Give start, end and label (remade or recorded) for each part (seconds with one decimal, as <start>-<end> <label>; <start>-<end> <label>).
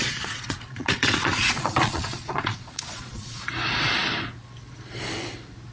0.0-3.4 remade; 3.4-5.7 recorded